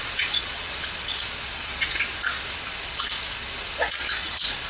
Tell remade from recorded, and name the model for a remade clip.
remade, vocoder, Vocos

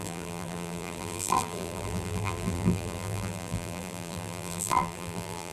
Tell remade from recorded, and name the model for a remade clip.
remade, vocoder, BigVGAN v2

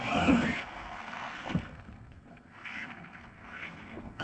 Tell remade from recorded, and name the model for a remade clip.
remade, codec, SNAC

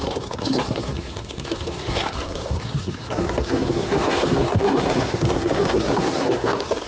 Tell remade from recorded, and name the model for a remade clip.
remade, codec, SNAC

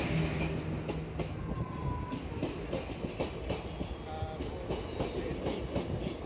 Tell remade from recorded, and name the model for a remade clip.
recorded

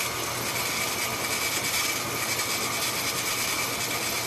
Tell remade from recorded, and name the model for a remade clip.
recorded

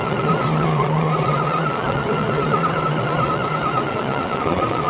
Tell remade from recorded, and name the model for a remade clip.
remade, vocoder, Vocos